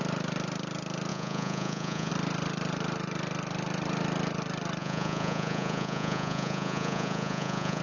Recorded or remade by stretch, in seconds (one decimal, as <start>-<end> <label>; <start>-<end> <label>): 0.0-1.1 recorded; 1.1-2.1 remade; 2.1-4.8 recorded; 4.8-7.8 remade